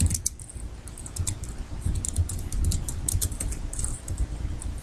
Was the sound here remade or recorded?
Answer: recorded